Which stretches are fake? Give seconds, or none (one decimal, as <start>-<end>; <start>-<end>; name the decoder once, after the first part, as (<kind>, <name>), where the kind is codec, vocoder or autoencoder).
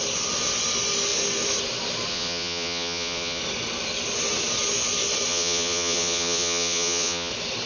2.1-3.4 (vocoder, Vocos); 5.3-7.3